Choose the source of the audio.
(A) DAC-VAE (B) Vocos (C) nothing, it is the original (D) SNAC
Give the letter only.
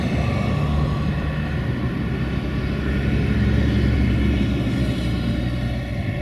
C